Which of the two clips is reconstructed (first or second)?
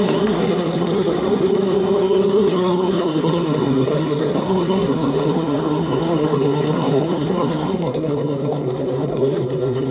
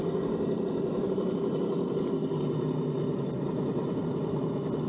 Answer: first